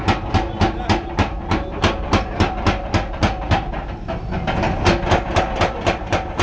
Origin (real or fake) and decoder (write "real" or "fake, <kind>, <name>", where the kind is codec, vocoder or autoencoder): real